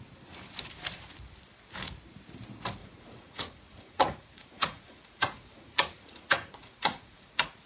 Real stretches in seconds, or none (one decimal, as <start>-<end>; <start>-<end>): 0.0-2.8